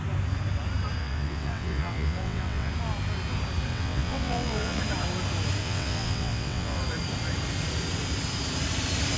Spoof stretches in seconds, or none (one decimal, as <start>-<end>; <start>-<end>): 1.0-2.7; 3.7-4.8; 5.6-6.8